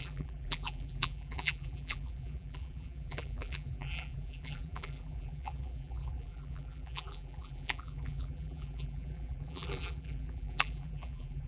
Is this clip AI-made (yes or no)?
yes